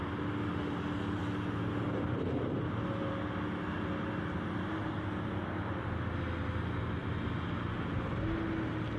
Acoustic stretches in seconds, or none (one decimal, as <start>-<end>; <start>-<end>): 0.0-9.0